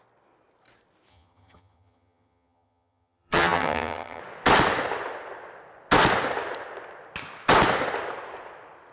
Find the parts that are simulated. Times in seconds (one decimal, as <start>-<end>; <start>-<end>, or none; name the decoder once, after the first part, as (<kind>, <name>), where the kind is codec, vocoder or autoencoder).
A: 1.1-4.2 (vocoder, HiFi-GAN)